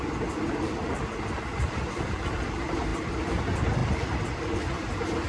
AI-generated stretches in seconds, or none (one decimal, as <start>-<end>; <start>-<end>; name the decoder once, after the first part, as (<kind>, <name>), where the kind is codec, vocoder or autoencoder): none